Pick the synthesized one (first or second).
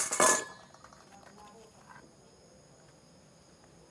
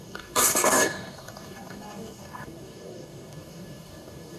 second